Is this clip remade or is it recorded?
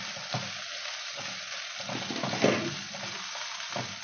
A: recorded